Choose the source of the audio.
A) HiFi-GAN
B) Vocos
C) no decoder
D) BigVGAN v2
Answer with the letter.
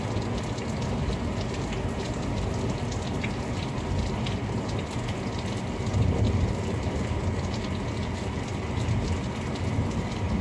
C